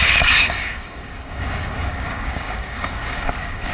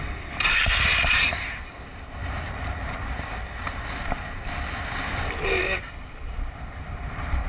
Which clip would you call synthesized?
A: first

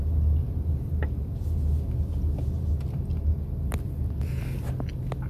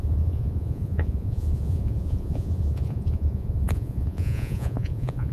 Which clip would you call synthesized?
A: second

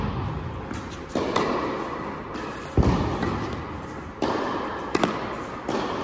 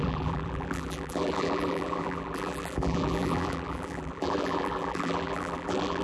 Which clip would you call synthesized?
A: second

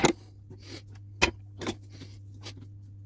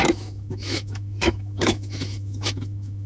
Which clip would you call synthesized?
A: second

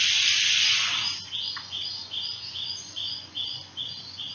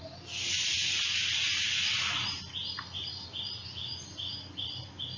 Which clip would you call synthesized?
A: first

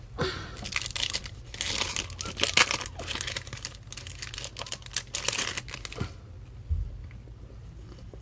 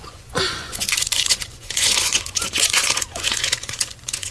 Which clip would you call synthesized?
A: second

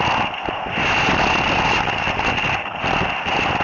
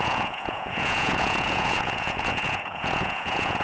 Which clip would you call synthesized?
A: second